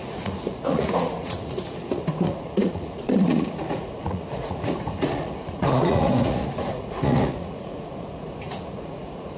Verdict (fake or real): fake